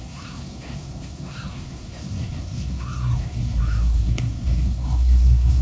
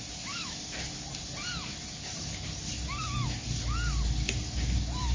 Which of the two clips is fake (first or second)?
first